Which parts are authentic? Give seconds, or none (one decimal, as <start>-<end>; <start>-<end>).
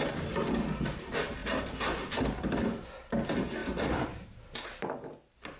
0.0-3.6; 4.9-5.6